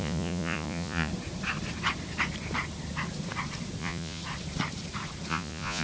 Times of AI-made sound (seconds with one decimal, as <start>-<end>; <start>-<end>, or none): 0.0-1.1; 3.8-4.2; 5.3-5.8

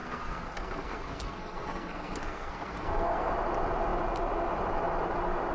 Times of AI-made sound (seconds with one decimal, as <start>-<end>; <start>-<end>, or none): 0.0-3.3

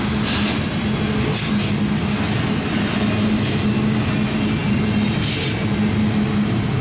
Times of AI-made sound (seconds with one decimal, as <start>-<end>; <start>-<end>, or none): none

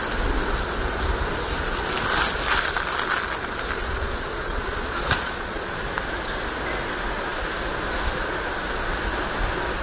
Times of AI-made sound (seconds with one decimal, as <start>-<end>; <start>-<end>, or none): 3.8-5.7